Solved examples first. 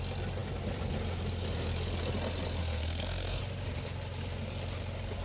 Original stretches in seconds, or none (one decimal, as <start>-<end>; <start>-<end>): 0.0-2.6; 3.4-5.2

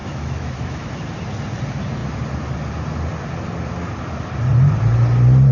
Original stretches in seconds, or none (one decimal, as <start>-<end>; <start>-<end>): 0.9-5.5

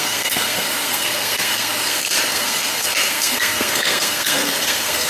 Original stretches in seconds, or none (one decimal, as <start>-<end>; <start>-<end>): none